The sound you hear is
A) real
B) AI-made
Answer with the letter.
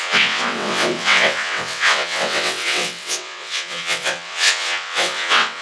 B